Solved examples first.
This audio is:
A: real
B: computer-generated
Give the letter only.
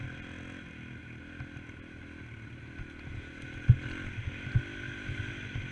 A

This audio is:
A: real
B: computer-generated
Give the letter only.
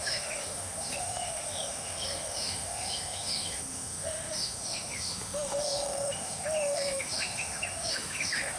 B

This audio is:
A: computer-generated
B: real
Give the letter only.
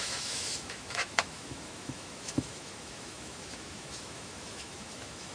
A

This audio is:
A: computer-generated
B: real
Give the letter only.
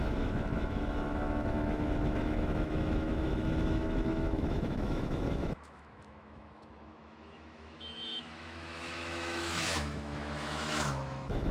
A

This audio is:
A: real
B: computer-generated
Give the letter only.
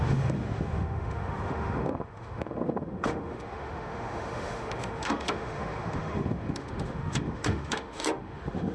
B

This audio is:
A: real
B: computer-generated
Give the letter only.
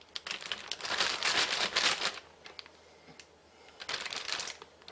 A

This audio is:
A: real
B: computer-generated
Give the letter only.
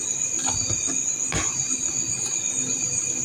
A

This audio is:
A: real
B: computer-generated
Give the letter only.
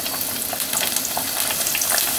A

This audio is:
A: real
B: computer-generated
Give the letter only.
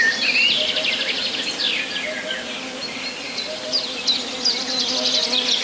A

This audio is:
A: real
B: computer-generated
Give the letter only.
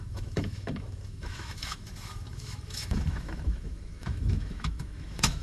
B